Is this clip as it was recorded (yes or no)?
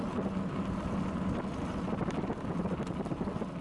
yes